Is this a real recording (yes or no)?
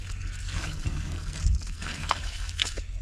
no